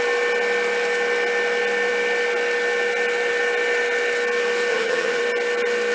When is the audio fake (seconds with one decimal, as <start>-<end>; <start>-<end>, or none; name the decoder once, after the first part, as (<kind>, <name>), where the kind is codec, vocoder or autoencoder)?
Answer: 4.7-5.2 (vocoder, HiFi-GAN)